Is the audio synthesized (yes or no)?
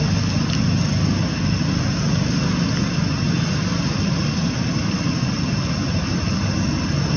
no